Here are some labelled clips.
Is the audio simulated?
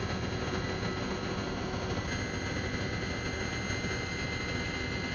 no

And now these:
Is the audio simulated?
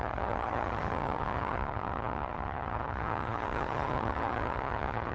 yes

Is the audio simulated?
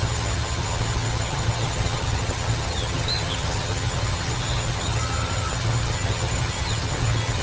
yes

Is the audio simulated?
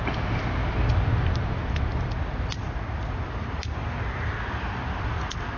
no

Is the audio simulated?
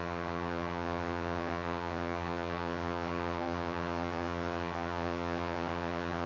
yes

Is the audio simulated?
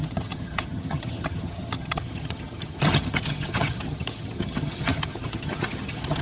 yes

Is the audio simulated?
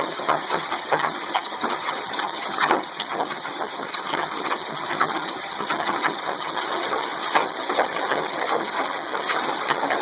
yes